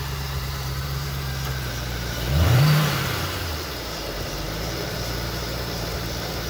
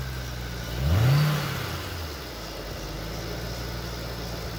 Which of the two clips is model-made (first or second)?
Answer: first